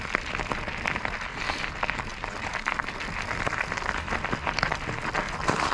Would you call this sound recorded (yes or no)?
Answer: yes